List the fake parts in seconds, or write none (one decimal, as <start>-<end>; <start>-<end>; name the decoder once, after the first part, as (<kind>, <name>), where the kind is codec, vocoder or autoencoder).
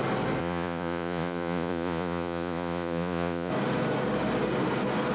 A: 0.4-3.5 (vocoder, Vocos)